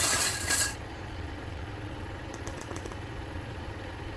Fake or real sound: fake